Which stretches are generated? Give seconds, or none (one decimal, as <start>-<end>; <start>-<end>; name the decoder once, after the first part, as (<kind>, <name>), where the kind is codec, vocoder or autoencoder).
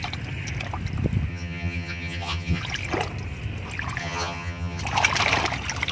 1.3-2.6 (vocoder, HiFi-GAN); 4.0-4.8